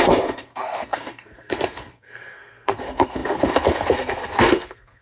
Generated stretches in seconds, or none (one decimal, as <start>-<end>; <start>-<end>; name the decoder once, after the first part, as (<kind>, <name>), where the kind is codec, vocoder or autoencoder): 0.0-5.0 (codec, SNAC)

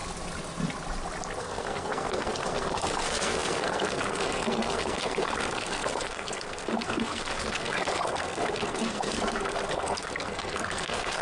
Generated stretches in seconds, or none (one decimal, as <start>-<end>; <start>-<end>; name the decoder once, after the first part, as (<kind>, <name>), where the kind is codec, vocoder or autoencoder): 1.4-11.2 (codec, SNAC)

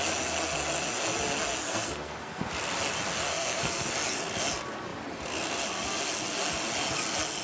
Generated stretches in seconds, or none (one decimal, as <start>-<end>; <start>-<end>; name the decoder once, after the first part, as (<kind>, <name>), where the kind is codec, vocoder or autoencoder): 1.6-2.5 (codec, SNAC); 3.3-3.9

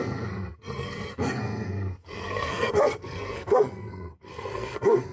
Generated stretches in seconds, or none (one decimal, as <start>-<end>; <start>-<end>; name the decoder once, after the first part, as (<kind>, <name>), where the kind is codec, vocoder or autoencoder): 0.0-5.1 (codec, SNAC)

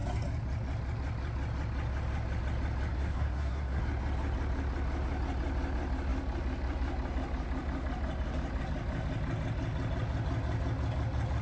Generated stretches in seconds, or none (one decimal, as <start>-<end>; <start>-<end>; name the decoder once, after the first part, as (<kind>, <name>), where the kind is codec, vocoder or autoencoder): 2.9-3.8 (codec, SNAC)